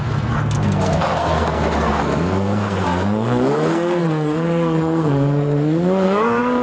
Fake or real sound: fake